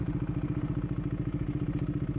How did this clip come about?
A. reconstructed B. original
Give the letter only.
B